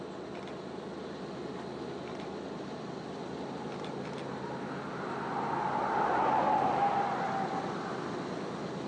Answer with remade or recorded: recorded